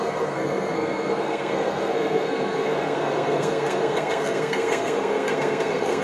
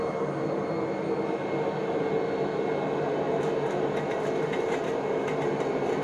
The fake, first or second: first